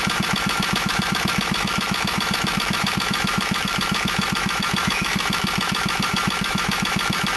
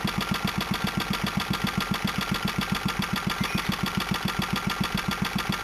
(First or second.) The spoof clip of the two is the first